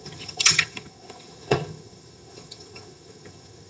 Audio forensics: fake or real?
fake